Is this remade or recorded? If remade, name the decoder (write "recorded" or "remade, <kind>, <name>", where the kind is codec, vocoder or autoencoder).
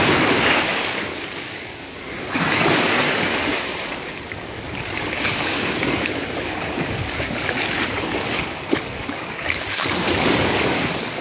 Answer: remade, codec, DAC